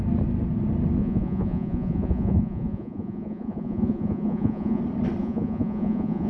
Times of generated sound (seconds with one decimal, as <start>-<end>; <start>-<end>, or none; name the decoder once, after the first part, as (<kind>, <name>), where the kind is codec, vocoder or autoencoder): 1.0-4.8 (vocoder, Vocos); 5.2-6.3